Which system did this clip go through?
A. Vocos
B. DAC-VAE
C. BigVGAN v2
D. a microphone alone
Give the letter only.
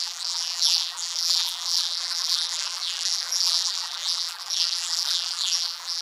C